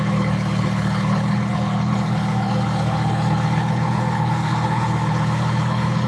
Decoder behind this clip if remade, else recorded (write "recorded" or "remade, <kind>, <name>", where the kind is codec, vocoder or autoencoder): remade, codec, HILCodec